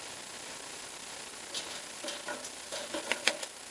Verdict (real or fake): real